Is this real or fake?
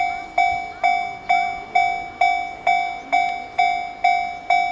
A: real